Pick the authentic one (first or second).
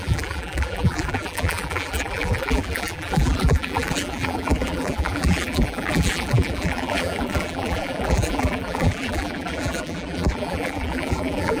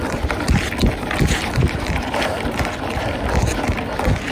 second